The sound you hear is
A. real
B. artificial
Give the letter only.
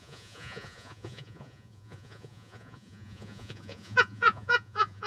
B